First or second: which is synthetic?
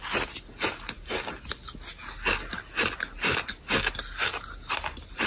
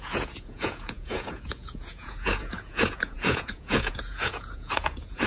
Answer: second